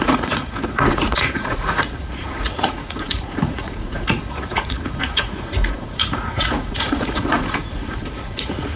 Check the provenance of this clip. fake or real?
fake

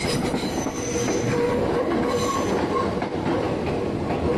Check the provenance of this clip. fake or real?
real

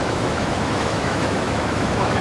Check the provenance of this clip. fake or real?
fake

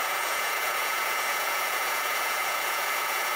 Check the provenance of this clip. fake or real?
fake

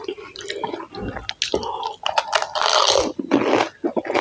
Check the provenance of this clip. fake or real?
real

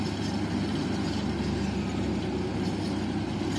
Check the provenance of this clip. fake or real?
real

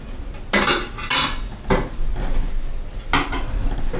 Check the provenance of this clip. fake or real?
real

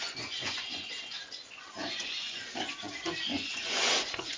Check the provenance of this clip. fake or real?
fake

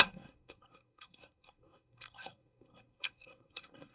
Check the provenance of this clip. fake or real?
fake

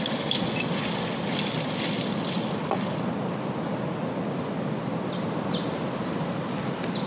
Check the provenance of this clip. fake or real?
real